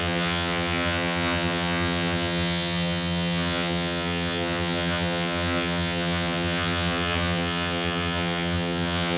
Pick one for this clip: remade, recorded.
remade